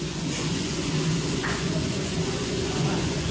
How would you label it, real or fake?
fake